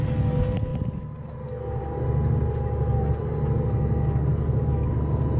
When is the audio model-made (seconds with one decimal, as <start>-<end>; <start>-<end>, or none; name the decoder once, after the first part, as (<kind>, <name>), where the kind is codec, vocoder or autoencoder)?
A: 4.3-4.9 (codec, DAC)